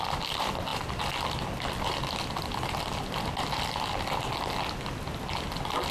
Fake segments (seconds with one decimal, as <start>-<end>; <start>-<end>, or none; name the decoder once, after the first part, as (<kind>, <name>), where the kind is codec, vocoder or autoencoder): none